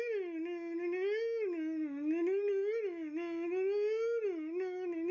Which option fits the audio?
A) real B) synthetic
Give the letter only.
A